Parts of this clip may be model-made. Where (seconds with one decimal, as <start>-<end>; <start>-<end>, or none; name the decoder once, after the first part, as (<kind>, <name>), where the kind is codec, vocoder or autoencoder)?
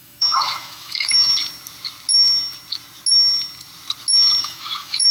0.0-1.3 (autoencoder, DAC-VAE); 4.4-5.1